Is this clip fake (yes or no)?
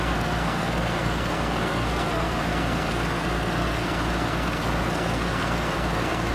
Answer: yes